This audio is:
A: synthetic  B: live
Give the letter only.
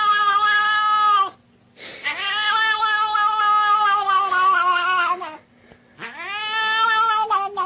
B